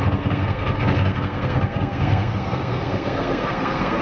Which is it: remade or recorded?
remade